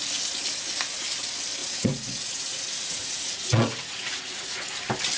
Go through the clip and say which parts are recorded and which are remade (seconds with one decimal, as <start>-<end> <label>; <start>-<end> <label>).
0.0-1.6 recorded; 1.6-4.7 remade; 4.7-5.2 recorded